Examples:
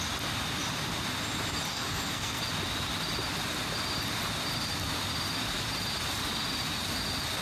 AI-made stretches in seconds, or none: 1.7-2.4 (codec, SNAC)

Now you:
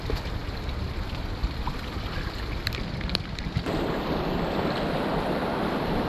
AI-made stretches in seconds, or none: none